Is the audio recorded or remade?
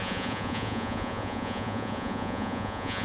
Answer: remade